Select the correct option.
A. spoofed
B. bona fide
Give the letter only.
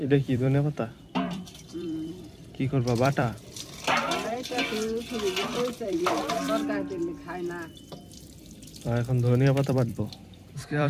A